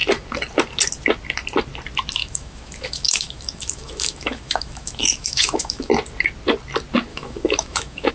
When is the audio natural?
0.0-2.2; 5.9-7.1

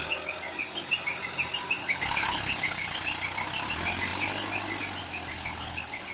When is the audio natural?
0.0-1.8; 3.0-5.3

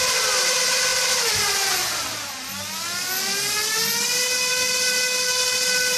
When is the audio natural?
0.0-6.0

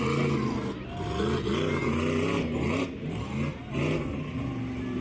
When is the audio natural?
0.0-5.0

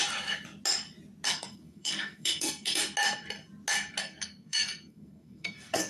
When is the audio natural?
0.0-1.3; 2.8-4.0

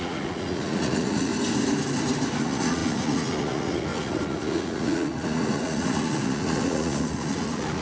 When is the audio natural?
1.3-2.4